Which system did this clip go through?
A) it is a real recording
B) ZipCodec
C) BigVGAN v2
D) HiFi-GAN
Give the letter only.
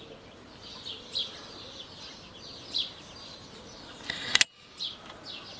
A